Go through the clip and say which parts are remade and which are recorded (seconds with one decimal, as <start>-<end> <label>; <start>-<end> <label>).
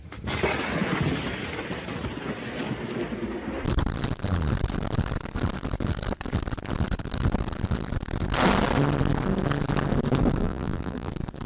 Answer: 0.0-10.4 recorded; 10.4-11.1 remade; 11.1-11.5 recorded